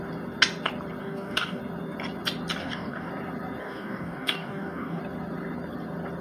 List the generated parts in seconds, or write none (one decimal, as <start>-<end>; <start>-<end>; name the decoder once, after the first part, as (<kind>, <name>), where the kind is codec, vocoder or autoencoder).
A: 1.0-1.6 (codec, DAC); 2.6-3.1; 3.6-5.0